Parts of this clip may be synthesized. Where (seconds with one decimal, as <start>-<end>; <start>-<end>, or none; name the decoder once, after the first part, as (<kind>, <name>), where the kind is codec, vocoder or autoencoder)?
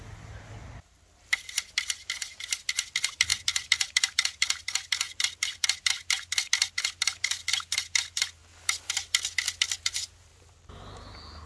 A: 10.3-11.0 (vocoder, BigVGAN v2)